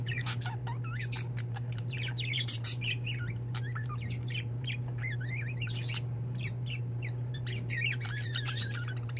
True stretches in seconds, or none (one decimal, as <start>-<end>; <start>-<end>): 0.6-1.4